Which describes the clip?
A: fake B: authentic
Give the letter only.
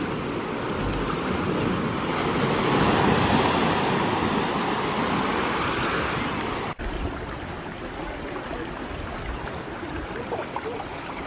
B